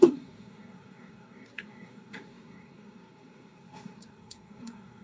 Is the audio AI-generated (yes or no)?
yes